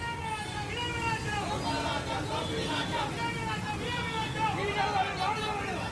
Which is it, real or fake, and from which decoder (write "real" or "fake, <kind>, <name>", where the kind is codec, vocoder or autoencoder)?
real